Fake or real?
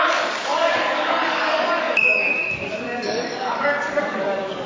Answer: fake